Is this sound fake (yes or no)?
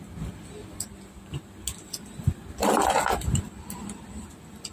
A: no